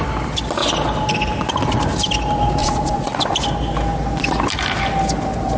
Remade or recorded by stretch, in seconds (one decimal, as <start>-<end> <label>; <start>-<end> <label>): 0.0-2.6 recorded; 2.6-3.2 remade; 3.2-5.6 recorded